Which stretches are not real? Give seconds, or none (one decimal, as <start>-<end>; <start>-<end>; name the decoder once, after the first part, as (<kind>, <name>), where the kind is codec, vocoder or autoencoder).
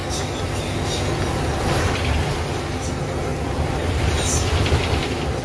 3.3-4.8 (vocoder, BigVGAN v2)